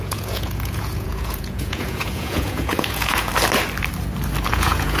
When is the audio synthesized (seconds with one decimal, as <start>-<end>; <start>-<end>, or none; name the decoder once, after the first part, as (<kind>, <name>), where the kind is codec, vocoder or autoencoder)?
0.0-3.3 (vocoder, Vocos); 4.5-5.0